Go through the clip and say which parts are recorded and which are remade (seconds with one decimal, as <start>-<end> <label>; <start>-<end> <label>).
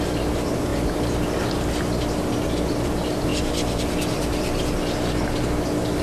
0.0-6.0 remade